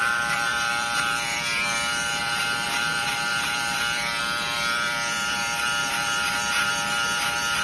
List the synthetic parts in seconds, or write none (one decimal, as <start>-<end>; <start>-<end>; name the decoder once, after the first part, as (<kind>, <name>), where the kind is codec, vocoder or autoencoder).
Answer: 0.0-7.6 (vocoder, BigVGAN v2)